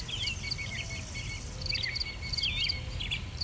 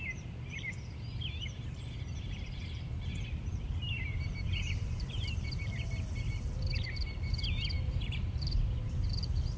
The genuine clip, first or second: first